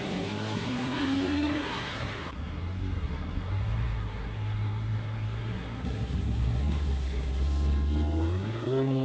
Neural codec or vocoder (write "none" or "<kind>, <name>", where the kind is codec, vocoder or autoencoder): codec, SNAC